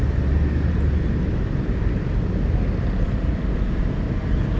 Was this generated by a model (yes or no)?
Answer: no